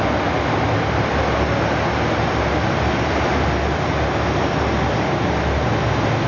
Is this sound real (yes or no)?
yes